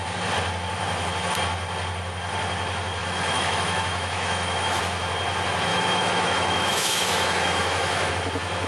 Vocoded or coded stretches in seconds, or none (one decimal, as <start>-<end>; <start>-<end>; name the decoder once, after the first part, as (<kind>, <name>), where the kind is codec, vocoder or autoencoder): 3.0-4.8 (autoencoder, DAC-VAE); 5.7-8.1